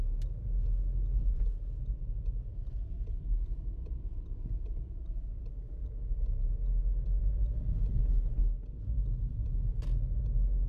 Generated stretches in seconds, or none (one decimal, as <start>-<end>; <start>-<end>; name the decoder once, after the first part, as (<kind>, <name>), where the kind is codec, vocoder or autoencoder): none